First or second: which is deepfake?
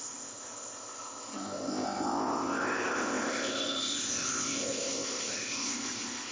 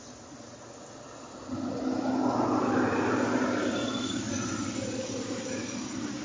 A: first